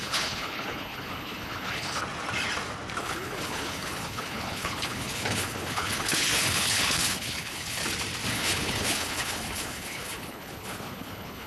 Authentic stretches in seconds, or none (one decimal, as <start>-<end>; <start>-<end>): 2.0-3.0; 7.8-8.3